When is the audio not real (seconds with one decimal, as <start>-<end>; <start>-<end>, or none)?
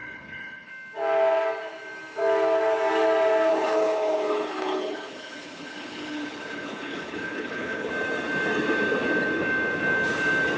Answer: 0.0-0.7; 3.5-7.9